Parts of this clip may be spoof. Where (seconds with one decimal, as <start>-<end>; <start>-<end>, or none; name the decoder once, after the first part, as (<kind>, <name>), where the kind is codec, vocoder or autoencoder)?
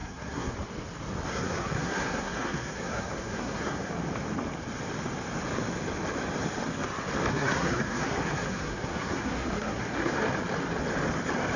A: 0.0-0.5 (codec, SNAC); 1.3-3.9; 7.3-10.1